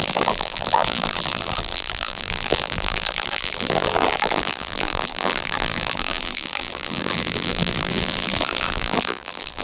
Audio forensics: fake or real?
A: fake